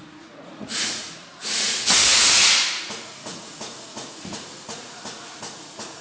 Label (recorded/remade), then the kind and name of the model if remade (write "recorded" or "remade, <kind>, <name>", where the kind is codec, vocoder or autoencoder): remade, vocoder, Vocos